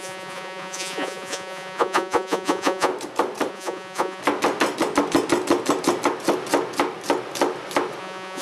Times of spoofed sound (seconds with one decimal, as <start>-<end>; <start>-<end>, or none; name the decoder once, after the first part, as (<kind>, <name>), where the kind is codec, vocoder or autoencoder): 0.0-2.9 (vocoder, Vocos); 3.5-4.2; 8.0-8.4